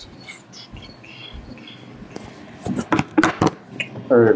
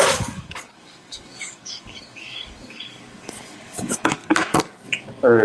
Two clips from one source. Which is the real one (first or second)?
first